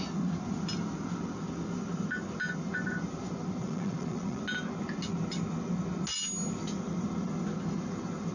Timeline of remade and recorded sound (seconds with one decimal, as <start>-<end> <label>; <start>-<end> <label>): 0.0-3.6 recorded; 3.6-4.4 remade; 4.4-8.3 recorded